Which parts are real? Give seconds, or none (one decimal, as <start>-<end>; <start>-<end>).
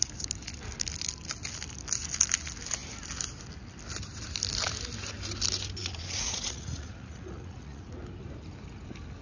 0.0-5.8; 7.9-9.2